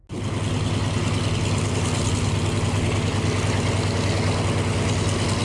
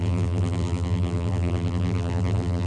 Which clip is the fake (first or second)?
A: second